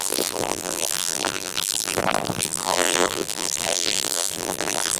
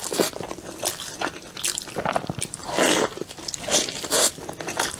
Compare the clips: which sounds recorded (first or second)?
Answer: second